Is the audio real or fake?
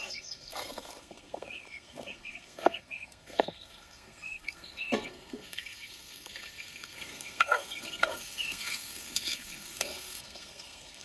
fake